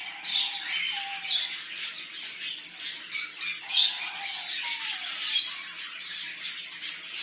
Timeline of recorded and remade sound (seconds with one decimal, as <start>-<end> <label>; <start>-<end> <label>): 0.0-7.2 recorded